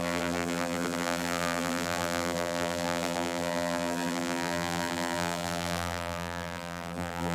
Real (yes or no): no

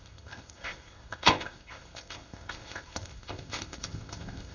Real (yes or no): no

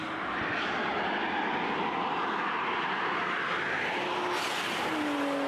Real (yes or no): yes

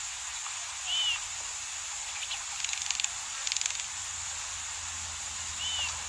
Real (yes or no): yes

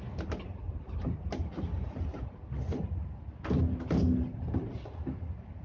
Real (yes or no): yes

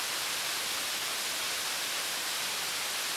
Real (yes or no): yes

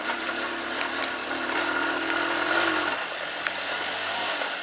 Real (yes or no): yes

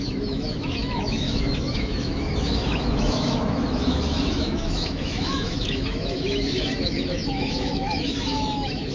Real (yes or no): no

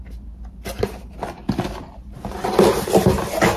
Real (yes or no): yes